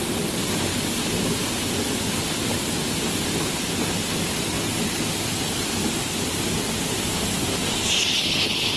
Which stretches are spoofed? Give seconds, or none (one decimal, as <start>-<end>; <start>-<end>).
8.1-8.8